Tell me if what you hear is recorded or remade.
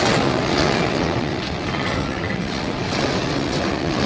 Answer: remade